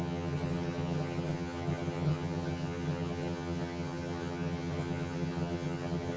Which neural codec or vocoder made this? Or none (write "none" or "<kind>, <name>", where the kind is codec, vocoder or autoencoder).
vocoder, HiFi-GAN